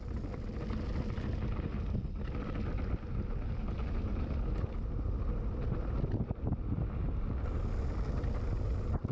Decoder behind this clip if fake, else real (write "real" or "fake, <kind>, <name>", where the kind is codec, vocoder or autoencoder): real